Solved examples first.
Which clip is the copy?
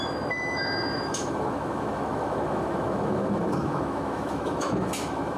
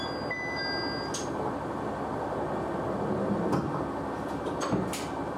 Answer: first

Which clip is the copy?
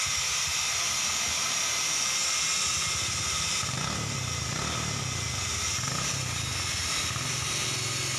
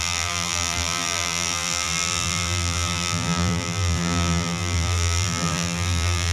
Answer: second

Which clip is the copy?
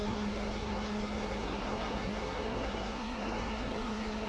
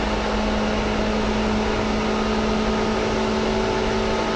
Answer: first